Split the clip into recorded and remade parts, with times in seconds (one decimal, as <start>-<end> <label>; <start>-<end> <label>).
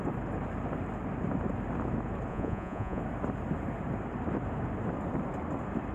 0.0-2.3 recorded; 2.3-3.0 remade; 3.0-5.9 recorded